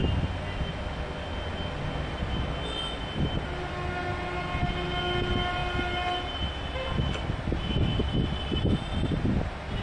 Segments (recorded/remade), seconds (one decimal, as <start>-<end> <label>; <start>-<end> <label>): 0.0-9.8 recorded